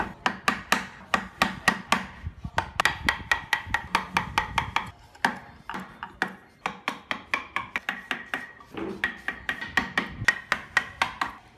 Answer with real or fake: real